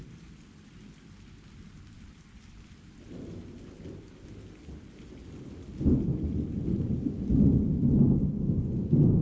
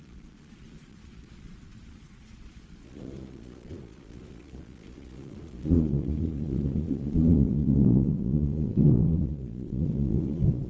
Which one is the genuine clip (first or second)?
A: first